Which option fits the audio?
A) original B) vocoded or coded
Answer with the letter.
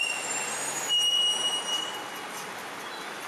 A